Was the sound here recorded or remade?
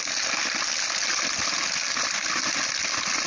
recorded